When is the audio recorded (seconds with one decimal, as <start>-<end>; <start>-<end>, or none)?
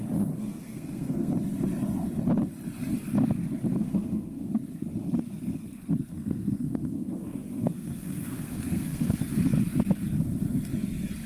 0.0-0.4; 1.3-3.7; 4.5-6.1; 9.2-11.3